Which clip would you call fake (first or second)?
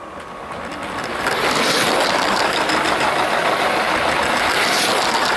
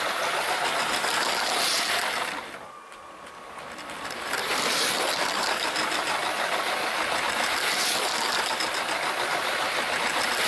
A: second